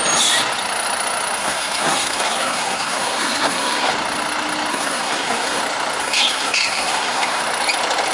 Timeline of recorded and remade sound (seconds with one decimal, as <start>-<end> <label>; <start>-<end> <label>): 0.0-1.4 recorded; 1.4-3.9 remade; 3.9-4.7 recorded; 4.7-5.6 remade; 5.6-6.0 recorded; 6.0-7.4 remade; 7.4-8.1 recorded